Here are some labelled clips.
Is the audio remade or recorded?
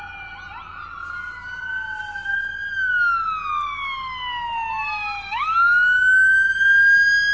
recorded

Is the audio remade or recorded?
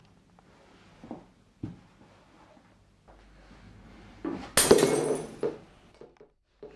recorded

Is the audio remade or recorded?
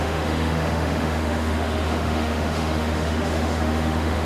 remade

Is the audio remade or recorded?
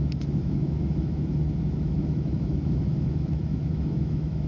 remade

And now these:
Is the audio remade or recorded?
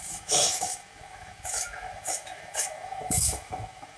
remade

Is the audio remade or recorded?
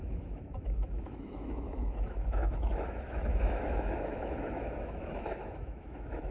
remade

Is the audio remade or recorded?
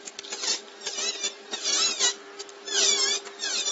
recorded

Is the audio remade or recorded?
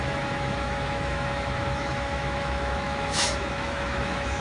remade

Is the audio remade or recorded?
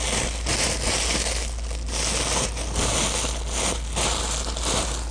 recorded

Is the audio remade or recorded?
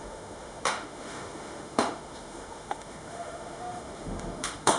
remade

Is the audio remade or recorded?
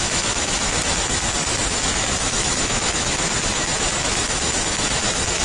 remade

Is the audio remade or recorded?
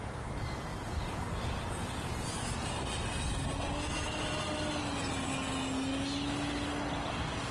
recorded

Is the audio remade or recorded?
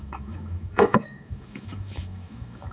remade